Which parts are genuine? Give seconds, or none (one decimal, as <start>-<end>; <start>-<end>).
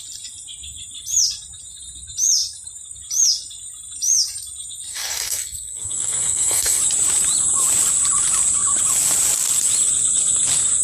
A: 0.0-4.9; 6.8-10.8